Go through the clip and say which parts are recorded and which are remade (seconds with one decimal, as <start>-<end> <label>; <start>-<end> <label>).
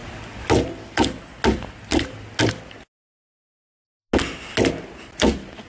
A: 0.0-5.7 recorded